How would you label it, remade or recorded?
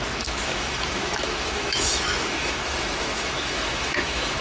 remade